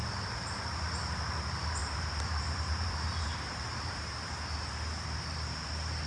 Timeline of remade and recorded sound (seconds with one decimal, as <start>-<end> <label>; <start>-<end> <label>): 0.0-0.5 remade; 0.5-1.8 recorded; 1.8-4.1 remade; 4.1-6.1 recorded